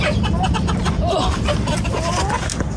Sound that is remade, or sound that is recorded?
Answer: recorded